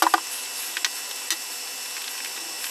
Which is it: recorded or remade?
recorded